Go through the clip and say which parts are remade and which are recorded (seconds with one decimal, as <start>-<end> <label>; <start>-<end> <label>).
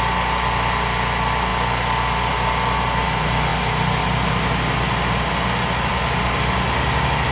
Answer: 0.0-7.3 recorded